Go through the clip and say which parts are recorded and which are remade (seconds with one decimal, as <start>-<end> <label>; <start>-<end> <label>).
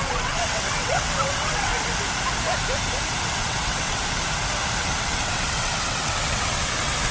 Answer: 0.0-1.7 remade; 1.7-3.3 recorded; 3.3-4.0 remade; 4.0-4.8 recorded; 4.8-7.1 remade